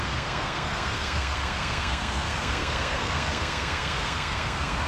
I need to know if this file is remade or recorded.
remade